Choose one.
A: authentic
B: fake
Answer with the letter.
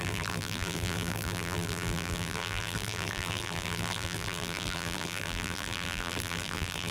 B